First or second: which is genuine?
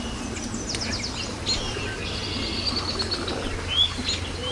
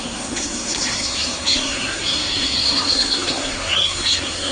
first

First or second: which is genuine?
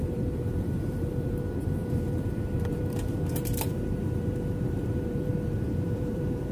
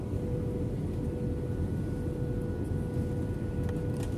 second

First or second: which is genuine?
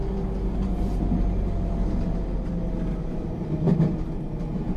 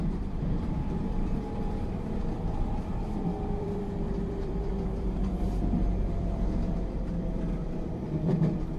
first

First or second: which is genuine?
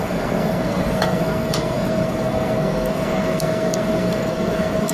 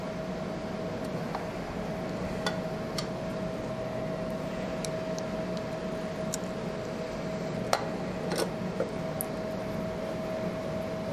second